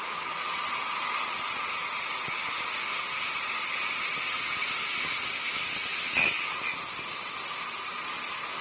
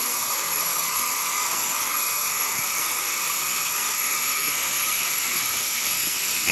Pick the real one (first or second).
first